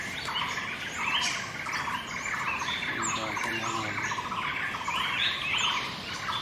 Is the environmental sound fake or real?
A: real